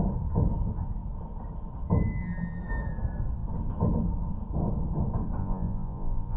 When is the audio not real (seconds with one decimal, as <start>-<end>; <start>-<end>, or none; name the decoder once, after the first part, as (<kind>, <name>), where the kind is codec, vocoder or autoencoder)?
5.4-6.4 (vocoder, Vocos)